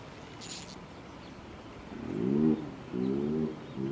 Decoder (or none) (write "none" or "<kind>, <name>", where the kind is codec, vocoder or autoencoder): none